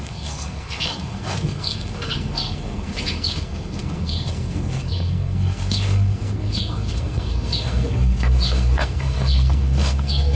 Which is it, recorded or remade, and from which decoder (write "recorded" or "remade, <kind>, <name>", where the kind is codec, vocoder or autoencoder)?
remade, codec, SNAC